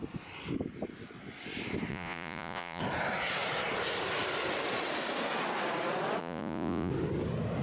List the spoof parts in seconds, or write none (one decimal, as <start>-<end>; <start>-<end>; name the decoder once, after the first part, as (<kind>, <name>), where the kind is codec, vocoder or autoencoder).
1.9-2.8 (vocoder, Vocos); 6.2-6.9